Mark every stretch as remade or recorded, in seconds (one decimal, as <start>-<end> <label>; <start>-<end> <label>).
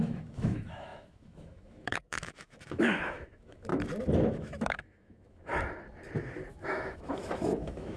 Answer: 0.0-3.7 remade; 3.7-4.3 recorded; 4.3-5.5 remade; 5.5-6.5 recorded; 6.5-8.0 remade